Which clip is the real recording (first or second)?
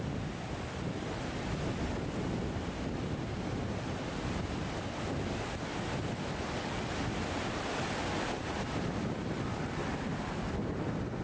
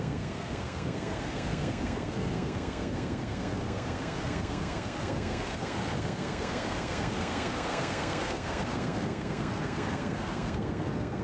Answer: first